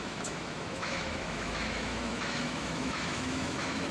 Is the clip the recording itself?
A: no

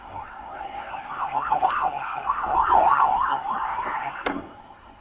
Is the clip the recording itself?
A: no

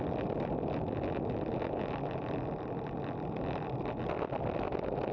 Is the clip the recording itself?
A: yes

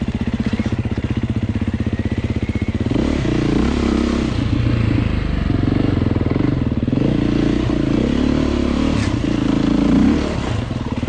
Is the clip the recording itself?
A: yes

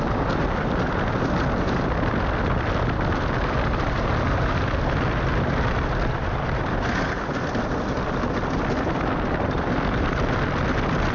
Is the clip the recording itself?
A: yes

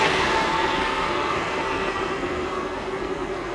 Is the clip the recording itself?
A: no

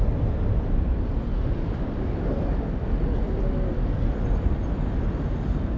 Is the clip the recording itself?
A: yes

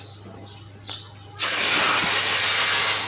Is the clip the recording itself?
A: yes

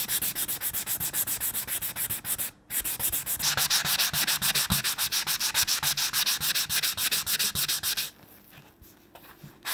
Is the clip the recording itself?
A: yes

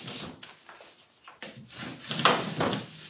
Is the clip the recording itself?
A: yes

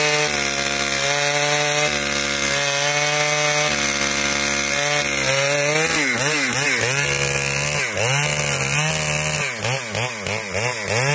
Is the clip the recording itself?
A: yes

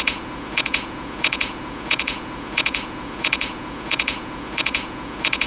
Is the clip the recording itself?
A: no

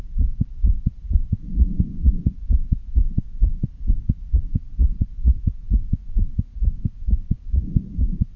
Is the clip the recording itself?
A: no